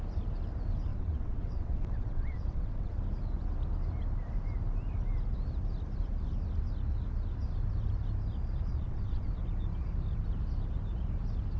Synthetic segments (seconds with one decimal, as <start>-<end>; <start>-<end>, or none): 0.9-2.9; 8.7-9.3